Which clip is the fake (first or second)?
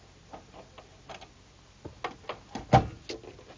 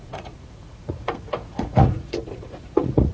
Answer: second